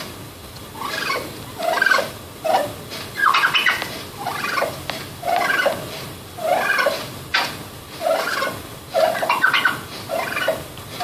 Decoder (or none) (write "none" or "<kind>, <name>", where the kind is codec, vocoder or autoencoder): none